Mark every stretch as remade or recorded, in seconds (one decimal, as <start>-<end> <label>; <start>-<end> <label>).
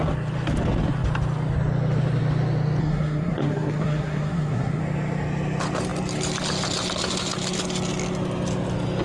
0.0-2.8 recorded; 2.8-4.8 remade; 4.8-9.0 recorded